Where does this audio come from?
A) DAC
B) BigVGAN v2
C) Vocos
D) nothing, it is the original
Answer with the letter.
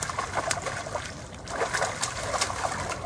D